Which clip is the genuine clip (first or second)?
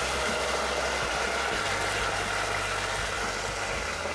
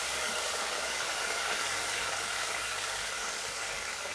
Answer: first